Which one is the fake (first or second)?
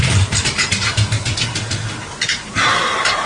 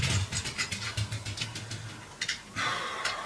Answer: first